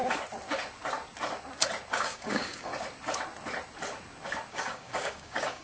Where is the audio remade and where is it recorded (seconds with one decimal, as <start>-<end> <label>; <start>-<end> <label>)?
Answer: 0.0-1.9 recorded; 1.9-2.7 remade; 2.7-4.5 recorded; 4.5-5.6 remade